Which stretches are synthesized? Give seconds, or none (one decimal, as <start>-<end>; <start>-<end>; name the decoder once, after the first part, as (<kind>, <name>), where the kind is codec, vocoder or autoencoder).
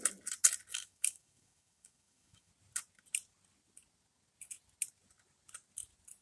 0.7-2.5 (autoencoder, DAC-VAE)